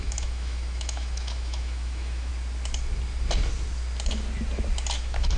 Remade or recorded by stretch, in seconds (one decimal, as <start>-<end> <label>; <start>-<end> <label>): 0.0-2.3 remade; 2.3-5.0 recorded; 5.0-5.4 remade